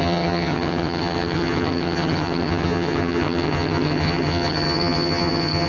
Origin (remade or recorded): remade